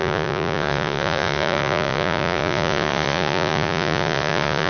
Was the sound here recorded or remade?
remade